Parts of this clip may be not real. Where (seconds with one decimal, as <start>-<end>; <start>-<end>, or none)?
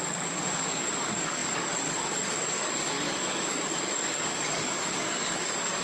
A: 0.0-5.8